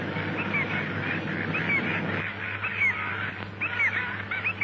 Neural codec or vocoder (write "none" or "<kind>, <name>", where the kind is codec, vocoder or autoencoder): none